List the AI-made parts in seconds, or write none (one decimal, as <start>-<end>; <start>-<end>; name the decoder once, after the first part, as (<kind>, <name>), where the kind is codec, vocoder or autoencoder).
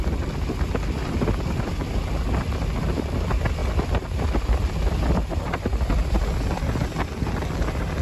3.6-4.8 (vocoder, BigVGAN v2)